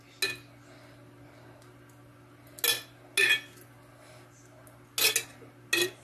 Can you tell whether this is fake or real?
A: real